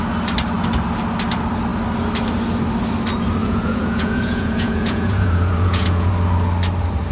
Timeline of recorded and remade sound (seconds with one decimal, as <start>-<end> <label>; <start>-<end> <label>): 0.0-3.4 recorded; 3.4-6.1 remade; 6.1-7.1 recorded